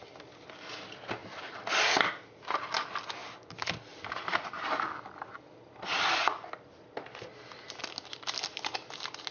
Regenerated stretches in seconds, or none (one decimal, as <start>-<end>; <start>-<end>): none